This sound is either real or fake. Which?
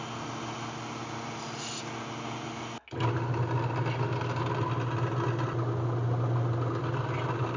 real